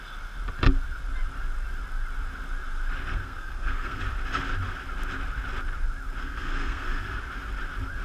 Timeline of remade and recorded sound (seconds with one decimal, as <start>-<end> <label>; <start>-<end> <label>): 0.0-3.1 recorded; 3.1-4.0 remade; 4.0-6.2 recorded; 6.2-7.2 remade; 7.2-8.0 recorded